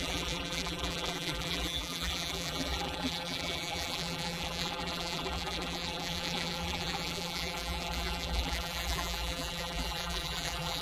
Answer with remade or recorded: remade